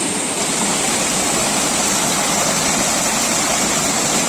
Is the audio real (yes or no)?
yes